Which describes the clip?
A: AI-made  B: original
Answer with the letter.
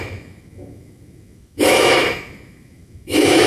A